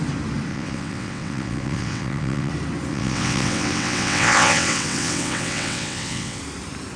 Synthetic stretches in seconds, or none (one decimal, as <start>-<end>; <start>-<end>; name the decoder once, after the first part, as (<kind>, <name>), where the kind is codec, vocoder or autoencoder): 0.5-2.5 (vocoder, WaveNeXt); 2.9-6.4